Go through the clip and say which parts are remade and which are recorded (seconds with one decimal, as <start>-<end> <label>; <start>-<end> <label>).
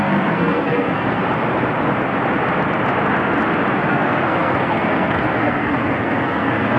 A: 0.0-1.2 remade; 1.2-3.9 recorded; 3.9-6.8 remade